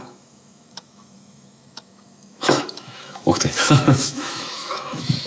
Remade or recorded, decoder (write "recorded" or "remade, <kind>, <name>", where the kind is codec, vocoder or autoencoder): remade, autoencoder, DAC-VAE